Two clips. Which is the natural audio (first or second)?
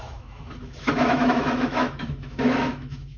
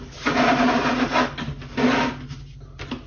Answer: second